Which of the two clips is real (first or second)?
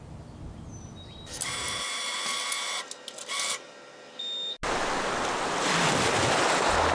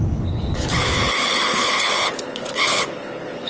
first